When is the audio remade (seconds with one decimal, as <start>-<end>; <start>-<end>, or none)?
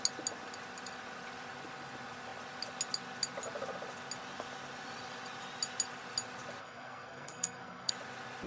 6.6-7.9